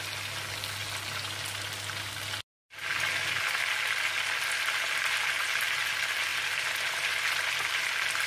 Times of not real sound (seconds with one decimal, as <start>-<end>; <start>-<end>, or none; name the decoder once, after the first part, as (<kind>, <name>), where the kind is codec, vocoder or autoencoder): none